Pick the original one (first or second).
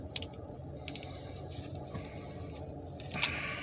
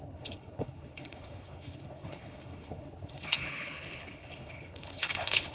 first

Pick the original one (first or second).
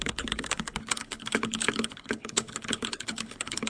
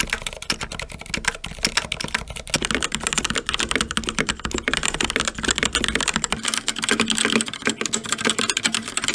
second